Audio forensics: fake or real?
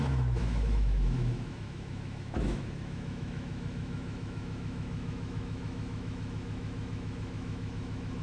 fake